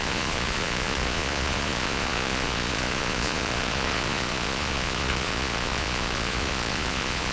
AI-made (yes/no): yes